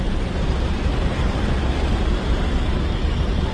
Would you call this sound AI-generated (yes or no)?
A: yes